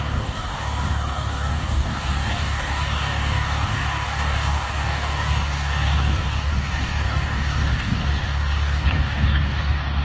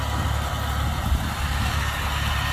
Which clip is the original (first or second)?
second